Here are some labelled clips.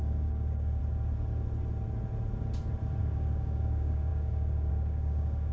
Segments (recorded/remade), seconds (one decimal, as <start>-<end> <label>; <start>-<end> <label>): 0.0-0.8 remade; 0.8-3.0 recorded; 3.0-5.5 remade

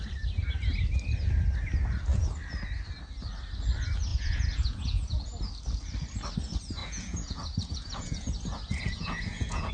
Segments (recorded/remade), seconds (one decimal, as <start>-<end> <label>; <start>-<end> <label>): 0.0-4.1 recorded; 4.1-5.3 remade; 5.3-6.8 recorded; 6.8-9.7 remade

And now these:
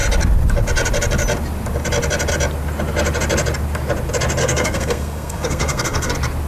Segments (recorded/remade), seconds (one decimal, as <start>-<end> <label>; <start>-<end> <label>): 0.0-4.4 recorded; 4.4-6.1 remade; 6.1-6.5 recorded